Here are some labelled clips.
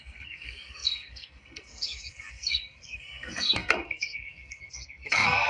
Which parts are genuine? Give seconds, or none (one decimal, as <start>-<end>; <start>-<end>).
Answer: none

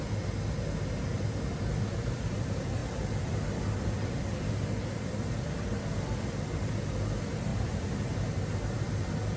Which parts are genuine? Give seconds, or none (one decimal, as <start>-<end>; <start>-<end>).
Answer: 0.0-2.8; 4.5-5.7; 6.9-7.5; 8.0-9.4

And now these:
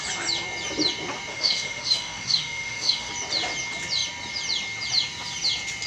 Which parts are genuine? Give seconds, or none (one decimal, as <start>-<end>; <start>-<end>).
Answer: 0.0-1.3; 3.1-5.9

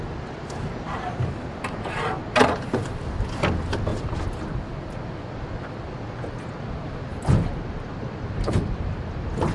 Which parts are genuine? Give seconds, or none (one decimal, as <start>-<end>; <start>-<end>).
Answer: 0.0-9.5